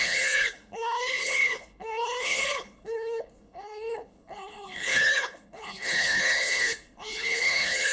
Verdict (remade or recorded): remade